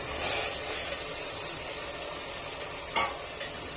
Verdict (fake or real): real